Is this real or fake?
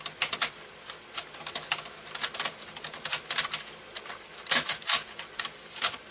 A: real